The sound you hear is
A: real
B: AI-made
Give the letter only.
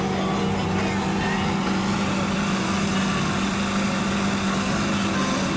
A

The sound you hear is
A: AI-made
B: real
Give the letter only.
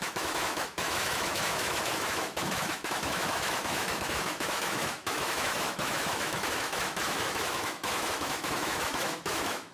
A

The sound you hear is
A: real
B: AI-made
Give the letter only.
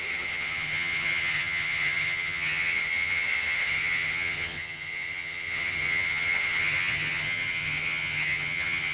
B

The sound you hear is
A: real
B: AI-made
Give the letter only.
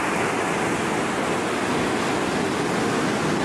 A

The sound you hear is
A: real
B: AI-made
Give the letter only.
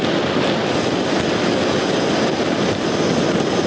A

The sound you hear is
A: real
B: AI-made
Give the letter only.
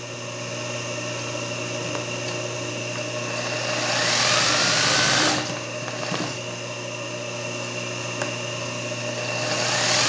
A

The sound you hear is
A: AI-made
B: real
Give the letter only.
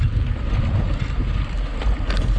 B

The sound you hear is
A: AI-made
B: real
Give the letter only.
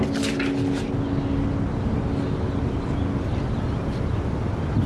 B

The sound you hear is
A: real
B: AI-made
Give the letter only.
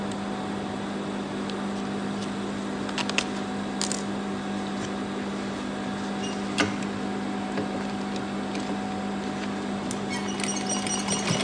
A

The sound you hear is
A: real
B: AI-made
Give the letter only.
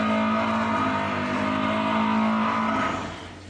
A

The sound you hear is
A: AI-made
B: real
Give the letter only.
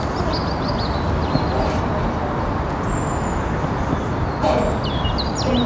B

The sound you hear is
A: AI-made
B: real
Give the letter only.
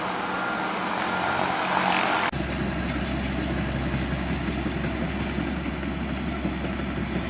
B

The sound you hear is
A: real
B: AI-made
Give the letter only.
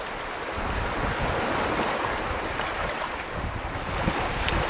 A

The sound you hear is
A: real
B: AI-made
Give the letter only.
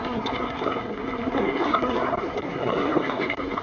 B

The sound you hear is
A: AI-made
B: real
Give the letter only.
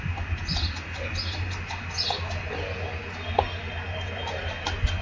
B